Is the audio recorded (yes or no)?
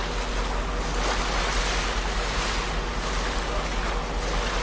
yes